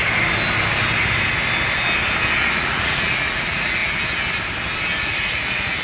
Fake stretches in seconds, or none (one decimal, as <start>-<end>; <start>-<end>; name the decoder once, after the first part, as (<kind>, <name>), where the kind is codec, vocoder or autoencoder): 2.5-3.8 (vocoder, Vocos); 5.0-5.8